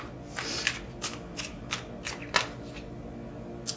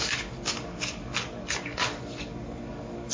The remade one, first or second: second